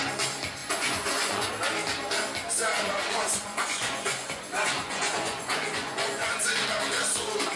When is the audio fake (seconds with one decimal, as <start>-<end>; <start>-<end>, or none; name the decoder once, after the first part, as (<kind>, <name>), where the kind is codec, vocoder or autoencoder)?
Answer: 0.6-1.5 (vocoder, Vocos); 2.7-6.4